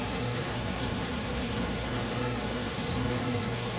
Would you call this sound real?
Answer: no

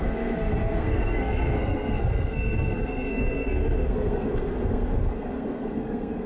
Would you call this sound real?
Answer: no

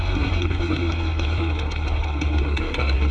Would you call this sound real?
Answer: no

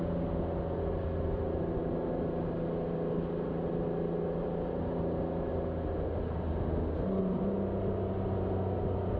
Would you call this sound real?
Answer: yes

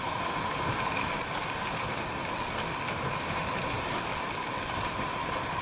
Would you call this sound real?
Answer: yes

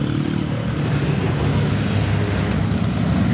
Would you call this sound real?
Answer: yes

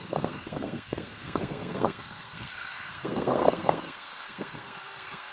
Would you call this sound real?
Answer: no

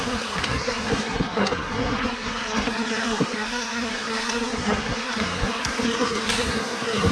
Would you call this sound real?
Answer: no